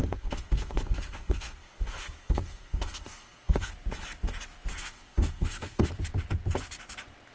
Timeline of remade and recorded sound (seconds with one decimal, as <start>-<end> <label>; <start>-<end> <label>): 0.0-3.7 remade; 3.7-4.7 recorded; 4.7-5.9 remade; 5.9-7.3 recorded